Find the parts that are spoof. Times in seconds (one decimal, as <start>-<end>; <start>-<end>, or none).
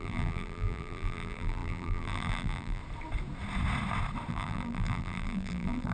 0.0-2.8; 4.3-5.9